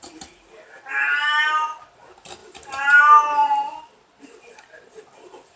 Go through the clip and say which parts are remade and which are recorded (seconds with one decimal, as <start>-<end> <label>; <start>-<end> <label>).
0.0-5.6 recorded